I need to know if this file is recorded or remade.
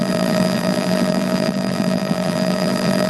remade